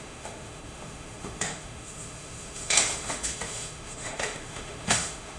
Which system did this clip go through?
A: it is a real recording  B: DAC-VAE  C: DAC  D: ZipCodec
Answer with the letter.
B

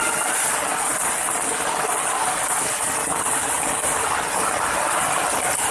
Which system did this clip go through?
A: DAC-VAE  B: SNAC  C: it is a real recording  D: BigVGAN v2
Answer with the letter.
C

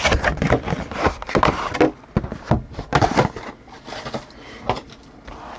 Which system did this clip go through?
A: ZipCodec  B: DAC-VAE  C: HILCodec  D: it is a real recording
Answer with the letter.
D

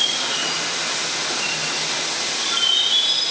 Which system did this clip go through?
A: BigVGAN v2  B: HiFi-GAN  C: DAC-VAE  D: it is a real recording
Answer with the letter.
D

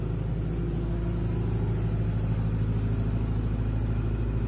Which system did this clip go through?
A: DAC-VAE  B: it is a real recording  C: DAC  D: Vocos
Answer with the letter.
B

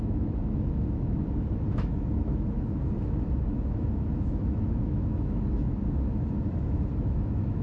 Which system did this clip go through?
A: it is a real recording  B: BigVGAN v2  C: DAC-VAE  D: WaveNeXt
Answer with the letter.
C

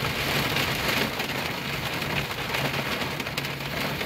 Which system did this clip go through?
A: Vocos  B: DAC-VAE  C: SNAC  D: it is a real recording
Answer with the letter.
D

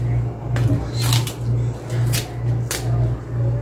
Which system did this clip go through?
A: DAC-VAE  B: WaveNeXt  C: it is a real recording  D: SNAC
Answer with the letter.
C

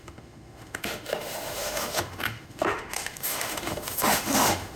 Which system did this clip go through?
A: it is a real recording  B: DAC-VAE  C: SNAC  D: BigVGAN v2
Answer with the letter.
B